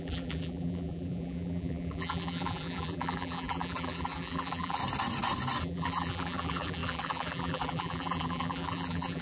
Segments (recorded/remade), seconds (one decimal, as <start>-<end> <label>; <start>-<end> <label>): 0.0-4.8 remade; 4.8-5.6 recorded; 5.6-9.2 remade